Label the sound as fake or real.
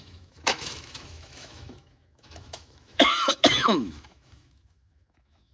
fake